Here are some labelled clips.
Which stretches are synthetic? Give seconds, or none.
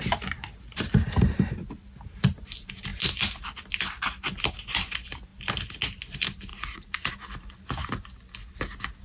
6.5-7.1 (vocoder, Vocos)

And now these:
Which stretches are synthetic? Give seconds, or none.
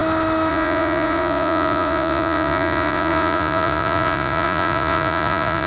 0.5-5.7 (vocoder, Vocos)